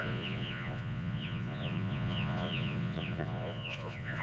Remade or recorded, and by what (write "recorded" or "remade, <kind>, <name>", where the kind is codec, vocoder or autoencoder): remade, vocoder, Vocos